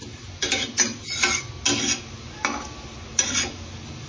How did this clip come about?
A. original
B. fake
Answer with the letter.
A